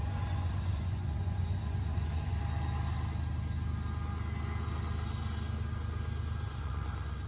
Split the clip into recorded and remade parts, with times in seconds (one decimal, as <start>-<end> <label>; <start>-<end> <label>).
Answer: 0.0-2.4 remade; 2.4-6.5 recorded; 6.5-7.3 remade